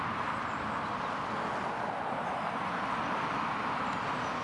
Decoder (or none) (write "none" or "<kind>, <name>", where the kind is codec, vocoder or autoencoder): none